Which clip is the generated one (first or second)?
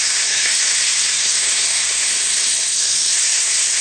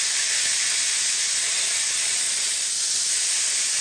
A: first